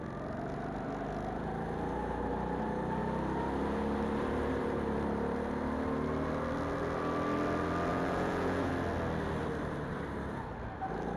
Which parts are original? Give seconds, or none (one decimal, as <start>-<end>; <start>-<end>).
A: 0.0-7.9; 8.7-11.2